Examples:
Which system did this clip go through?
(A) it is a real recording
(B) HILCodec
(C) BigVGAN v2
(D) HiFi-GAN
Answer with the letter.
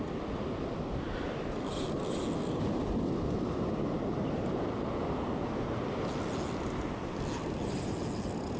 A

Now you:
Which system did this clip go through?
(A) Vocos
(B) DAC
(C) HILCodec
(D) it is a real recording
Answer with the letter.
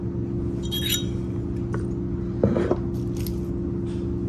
D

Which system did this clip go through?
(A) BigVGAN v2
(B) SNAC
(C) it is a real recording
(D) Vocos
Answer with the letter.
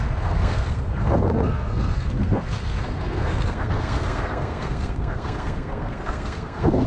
B